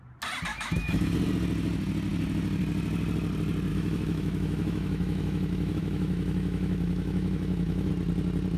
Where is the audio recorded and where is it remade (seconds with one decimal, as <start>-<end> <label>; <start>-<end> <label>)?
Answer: 0.0-0.5 recorded; 0.5-1.1 remade; 1.1-3.7 recorded; 3.7-7.9 remade; 7.9-8.6 recorded